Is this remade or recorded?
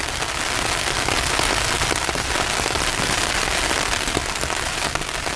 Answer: recorded